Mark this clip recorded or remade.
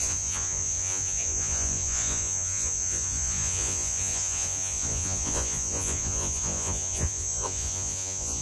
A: remade